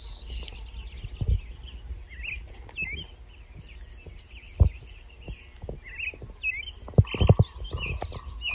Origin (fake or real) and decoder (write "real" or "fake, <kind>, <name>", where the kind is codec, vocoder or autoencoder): real